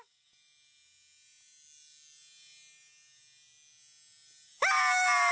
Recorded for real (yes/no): yes